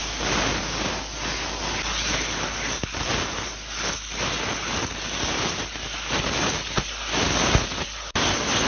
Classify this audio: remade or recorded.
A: recorded